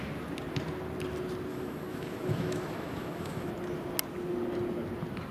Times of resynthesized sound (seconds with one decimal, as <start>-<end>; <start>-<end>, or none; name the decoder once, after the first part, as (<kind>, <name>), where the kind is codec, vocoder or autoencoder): 1.5-3.5 (autoencoder, DAC-VAE)